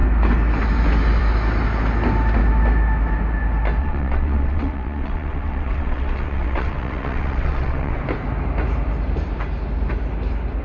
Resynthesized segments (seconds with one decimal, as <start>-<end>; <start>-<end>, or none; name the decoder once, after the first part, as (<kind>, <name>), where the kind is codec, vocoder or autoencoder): 3.8-8.0 (vocoder, WaveNeXt)